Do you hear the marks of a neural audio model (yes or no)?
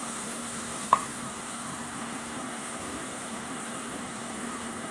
yes